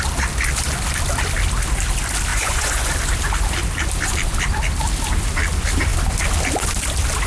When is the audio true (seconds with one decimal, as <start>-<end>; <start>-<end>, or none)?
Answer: 0.0-2.3; 2.9-7.3